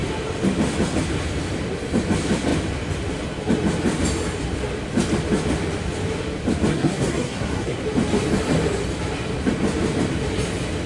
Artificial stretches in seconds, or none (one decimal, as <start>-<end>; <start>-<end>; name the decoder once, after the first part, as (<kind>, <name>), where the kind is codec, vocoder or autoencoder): 6.7-7.8 (codec, SNAC)